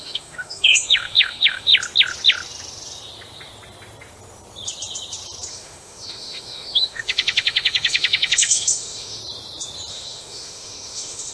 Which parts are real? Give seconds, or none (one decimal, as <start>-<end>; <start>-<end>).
1.7-5.5; 9.2-9.9